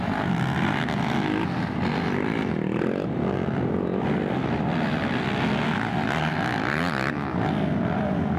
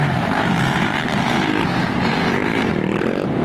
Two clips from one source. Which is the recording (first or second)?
first